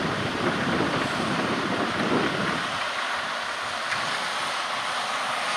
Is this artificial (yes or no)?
no